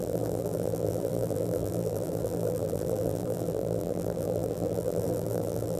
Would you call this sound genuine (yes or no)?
no